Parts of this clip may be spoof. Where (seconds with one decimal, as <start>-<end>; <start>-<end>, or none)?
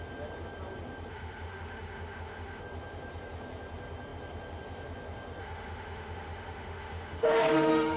1.1-2.6; 5.4-8.0